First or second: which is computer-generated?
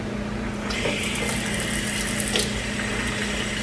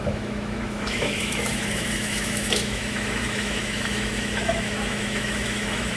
second